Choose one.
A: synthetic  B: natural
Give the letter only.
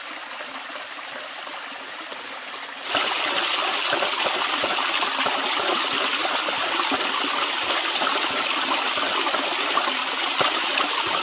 B